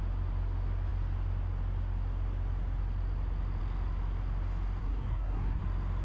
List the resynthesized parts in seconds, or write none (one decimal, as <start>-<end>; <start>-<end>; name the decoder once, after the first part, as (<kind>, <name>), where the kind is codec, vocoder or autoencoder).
4.8-5.6 (codec, SNAC)